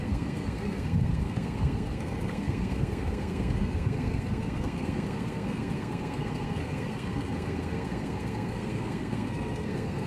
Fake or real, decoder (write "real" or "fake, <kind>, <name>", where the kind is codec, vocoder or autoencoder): fake, codec, SNAC